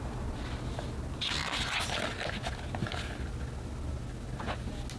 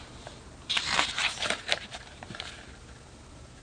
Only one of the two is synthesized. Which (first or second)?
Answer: second